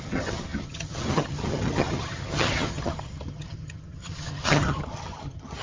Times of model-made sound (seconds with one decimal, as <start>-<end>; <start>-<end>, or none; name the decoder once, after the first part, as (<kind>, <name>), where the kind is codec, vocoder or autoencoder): 0.0-5.6 (vocoder, HiFi-GAN)